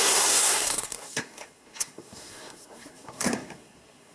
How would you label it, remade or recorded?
remade